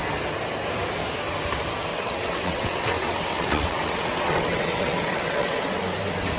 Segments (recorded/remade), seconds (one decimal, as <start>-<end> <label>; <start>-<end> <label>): 0.0-1.9 recorded; 1.9-5.7 remade; 5.7-6.4 recorded